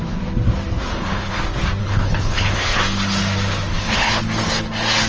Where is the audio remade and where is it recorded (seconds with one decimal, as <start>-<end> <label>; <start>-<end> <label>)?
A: 0.0-0.9 recorded; 0.9-1.4 remade; 1.4-1.8 recorded; 1.8-2.8 remade; 2.8-3.7 recorded; 3.7-4.2 remade; 4.2-5.1 recorded